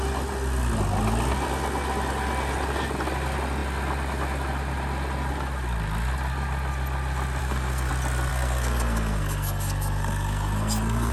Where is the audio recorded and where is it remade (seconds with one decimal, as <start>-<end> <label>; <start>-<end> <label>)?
0.0-7.4 recorded; 7.4-7.9 remade; 7.9-8.3 recorded; 8.3-11.1 remade